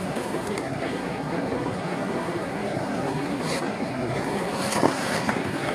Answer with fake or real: fake